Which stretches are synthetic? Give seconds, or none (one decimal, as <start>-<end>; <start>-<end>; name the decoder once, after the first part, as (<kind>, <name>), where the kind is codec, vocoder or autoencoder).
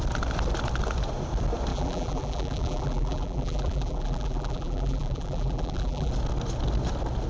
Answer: 1.7-6.1 (vocoder, BigVGAN v2)